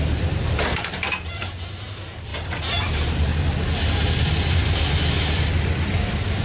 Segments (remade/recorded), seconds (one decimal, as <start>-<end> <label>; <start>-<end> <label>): 0.0-2.3 remade; 2.3-2.9 recorded; 2.9-3.3 remade; 3.3-6.4 recorded

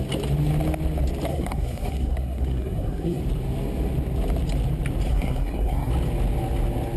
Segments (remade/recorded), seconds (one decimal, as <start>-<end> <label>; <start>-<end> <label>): 0.0-1.3 recorded; 1.3-3.2 remade; 3.2-5.1 recorded; 5.1-5.9 remade; 5.9-7.0 recorded